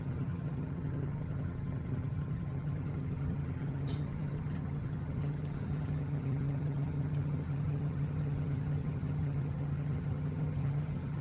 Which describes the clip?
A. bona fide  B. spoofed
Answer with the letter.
B